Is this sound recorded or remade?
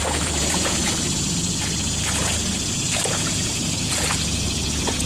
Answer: remade